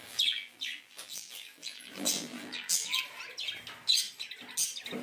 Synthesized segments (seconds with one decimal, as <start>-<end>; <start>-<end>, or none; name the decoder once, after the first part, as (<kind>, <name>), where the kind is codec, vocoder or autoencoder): 0.0-3.0 (vocoder, BigVGAN v2)